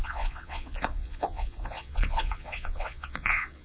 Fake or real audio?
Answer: fake